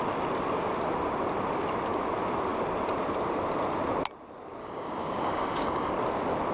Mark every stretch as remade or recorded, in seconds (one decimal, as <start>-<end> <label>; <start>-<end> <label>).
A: 0.0-4.6 recorded; 4.6-5.9 remade; 5.9-6.5 recorded